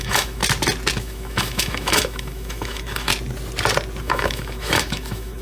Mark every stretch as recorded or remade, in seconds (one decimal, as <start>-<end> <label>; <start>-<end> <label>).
0.0-0.4 remade; 0.4-1.0 recorded; 1.0-3.1 remade; 3.1-4.0 recorded; 4.0-5.4 remade